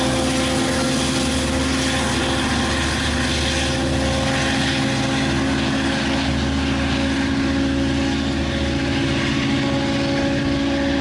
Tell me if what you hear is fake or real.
real